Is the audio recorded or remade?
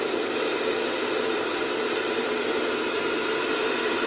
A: recorded